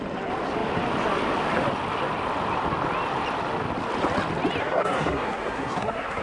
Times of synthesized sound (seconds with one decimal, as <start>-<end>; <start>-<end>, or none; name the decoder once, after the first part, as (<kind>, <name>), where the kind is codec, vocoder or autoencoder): 4.6-6.2 (codec, SNAC)